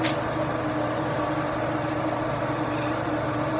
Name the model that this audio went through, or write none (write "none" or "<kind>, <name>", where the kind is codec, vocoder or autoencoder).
none